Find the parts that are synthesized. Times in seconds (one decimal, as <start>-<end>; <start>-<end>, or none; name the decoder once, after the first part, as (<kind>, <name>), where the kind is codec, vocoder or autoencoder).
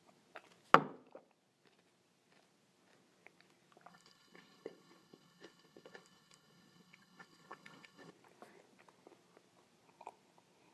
3.9-8.1 (codec, HILCodec)